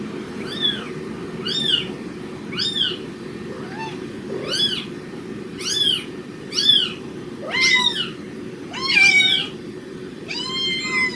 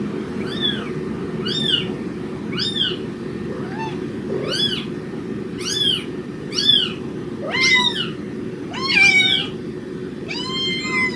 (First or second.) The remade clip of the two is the first